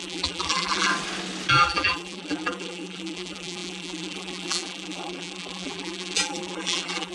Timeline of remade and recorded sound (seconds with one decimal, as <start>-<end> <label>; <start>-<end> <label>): 0.0-0.9 remade; 0.9-1.5 recorded; 1.5-7.1 remade